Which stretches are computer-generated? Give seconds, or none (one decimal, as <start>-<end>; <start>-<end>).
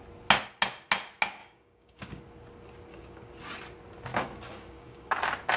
1.4-2.2; 2.9-3.4; 4.1-5.1